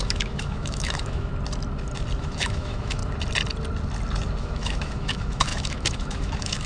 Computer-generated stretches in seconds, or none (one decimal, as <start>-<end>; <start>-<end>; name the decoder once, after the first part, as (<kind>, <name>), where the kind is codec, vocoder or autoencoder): 0.0-1.3 (autoencoder, DAC-VAE); 2.2-3.0; 4.4-6.7